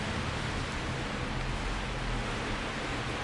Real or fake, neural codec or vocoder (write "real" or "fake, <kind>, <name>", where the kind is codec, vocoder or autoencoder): real